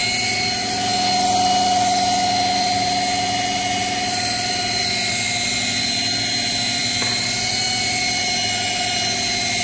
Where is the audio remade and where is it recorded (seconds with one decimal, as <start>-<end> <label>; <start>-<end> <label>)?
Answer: 0.0-9.6 recorded